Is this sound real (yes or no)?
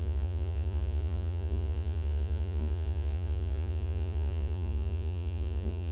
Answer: no